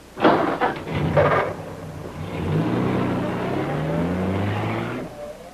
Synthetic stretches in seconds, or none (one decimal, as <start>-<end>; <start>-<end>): none